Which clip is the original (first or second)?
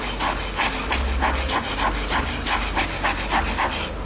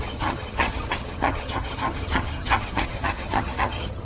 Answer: first